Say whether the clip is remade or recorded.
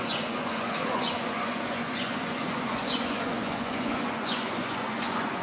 remade